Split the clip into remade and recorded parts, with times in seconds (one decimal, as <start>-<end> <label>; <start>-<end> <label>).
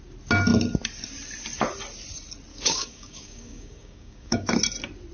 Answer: 0.0-2.5 recorded; 2.5-4.5 remade; 4.5-5.1 recorded